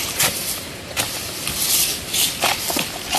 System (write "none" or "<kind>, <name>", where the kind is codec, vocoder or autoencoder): vocoder, BigVGAN v2